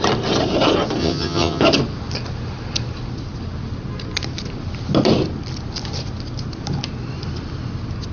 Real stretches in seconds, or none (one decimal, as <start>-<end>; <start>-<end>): 0.0-1.0; 1.6-8.1